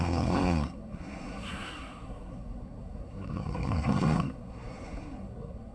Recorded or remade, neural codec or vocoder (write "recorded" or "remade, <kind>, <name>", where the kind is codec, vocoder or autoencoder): remade, codec, SNAC